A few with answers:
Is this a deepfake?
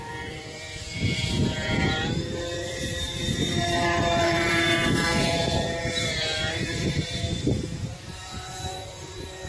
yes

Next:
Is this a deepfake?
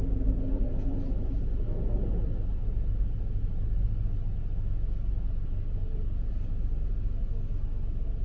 no